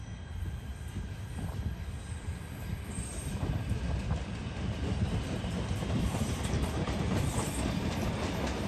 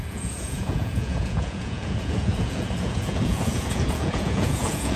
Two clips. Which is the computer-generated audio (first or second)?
second